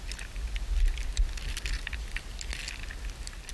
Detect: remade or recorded recorded